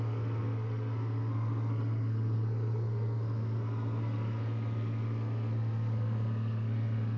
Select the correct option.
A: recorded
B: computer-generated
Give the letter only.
B